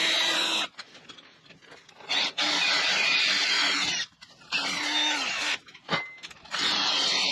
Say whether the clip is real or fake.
real